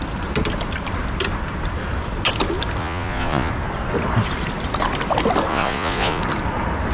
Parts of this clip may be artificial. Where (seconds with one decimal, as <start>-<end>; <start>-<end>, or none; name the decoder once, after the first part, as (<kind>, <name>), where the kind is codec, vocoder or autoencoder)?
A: 2.8-3.5 (vocoder, Vocos); 5.5-6.2

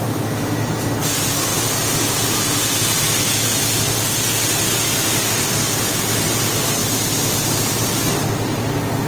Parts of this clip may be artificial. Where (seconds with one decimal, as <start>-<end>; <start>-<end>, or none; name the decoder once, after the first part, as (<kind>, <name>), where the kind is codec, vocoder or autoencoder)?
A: none

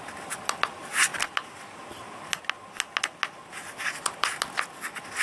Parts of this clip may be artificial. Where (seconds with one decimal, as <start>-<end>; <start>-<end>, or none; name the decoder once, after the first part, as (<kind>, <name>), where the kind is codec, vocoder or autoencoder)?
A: none

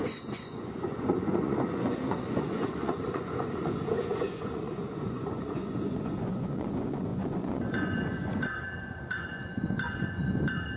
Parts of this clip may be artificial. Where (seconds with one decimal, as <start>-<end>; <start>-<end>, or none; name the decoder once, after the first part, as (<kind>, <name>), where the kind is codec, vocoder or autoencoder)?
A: 0.0-10.8 (vocoder, Vocos)

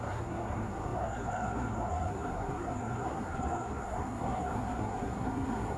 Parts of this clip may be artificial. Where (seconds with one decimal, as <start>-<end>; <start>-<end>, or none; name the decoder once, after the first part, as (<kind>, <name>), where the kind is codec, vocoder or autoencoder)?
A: 0.0-5.8 (codec, SNAC)

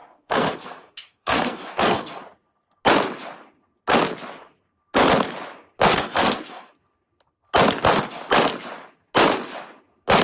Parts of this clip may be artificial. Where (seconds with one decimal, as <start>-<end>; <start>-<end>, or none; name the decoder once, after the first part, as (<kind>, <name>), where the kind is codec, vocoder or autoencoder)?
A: 0.0-2.2 (codec, SNAC); 5.9-6.7